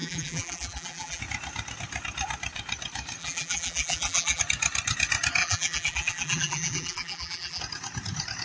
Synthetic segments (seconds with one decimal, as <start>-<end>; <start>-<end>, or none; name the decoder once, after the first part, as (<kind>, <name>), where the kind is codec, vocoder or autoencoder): 0.0-1.2 (vocoder, BigVGAN v2); 3.2-4.4; 5.4-7.6